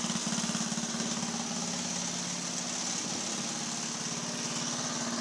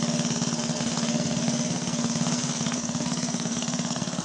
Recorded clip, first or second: first